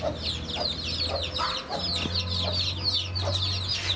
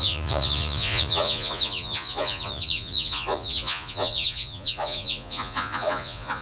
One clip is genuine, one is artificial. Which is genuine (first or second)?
first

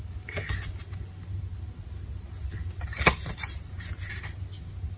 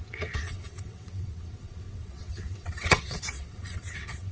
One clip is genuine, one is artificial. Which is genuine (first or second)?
first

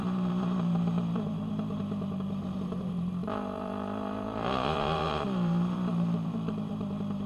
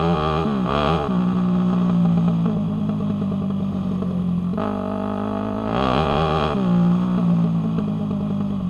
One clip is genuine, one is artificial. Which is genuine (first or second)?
second